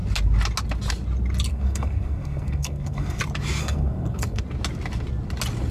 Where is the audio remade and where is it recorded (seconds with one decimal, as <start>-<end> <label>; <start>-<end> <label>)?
0.0-1.5 recorded; 1.5-3.2 remade; 3.2-3.6 recorded; 3.6-4.4 remade; 4.4-5.7 recorded